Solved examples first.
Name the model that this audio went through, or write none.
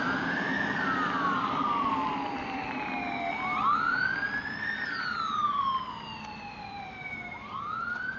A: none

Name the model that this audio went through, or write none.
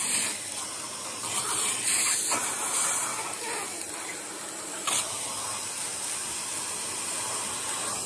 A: none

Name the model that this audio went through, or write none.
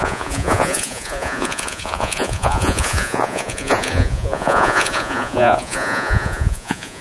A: vocoder, Vocos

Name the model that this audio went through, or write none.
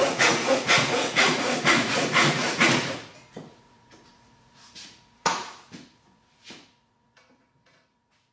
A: vocoder, Vocos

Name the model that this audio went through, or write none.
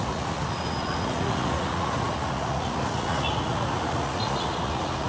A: vocoder, Vocos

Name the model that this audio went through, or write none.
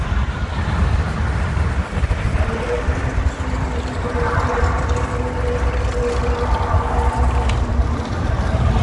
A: none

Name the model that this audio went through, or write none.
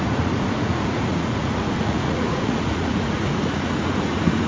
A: vocoder, Vocos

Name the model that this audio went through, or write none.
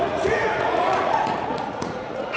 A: vocoder, Vocos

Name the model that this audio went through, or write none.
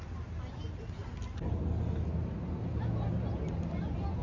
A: none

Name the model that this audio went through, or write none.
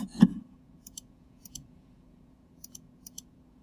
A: vocoder, Vocos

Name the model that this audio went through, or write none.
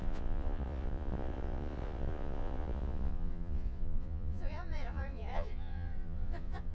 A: vocoder, Vocos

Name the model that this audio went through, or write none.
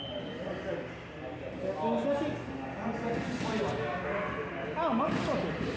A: none